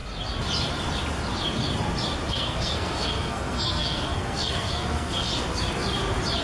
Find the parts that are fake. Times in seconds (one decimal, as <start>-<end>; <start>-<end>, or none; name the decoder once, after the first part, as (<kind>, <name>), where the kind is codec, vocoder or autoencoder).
2.3-5.3 (codec, SNAC)